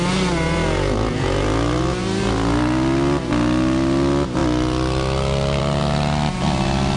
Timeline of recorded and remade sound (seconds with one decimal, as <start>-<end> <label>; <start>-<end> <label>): 0.0-7.0 recorded